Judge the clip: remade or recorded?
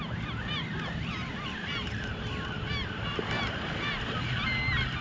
recorded